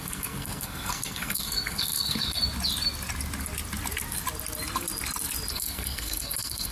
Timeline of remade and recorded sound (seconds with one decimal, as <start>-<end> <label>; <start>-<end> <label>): 0.0-2.4 remade; 2.4-5.5 recorded; 5.5-6.7 remade